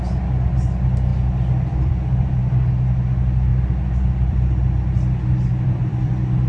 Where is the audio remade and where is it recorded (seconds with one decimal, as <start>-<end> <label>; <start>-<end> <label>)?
0.0-1.1 recorded; 1.1-2.4 remade; 2.4-3.5 recorded; 3.5-6.5 remade